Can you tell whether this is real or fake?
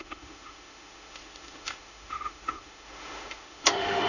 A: fake